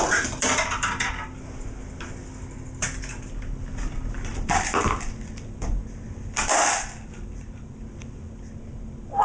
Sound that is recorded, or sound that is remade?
remade